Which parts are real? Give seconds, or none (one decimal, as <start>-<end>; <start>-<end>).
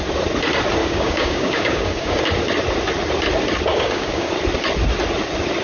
0.0-0.8; 2.2-3.7; 4.3-5.6